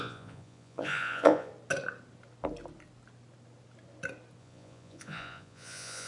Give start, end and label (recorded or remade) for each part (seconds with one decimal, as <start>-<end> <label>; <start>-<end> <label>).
0.0-1.5 remade; 1.5-4.4 recorded; 4.4-6.1 remade